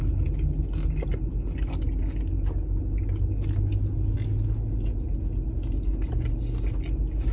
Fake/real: real